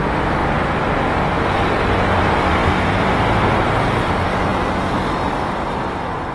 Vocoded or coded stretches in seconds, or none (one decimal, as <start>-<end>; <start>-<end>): none